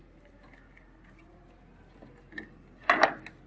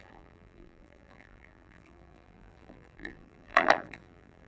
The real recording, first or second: first